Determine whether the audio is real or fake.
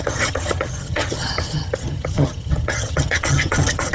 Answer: fake